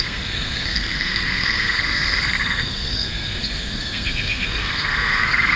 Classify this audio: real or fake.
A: fake